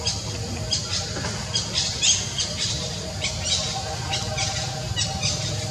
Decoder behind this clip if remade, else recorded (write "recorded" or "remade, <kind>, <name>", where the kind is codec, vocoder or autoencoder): recorded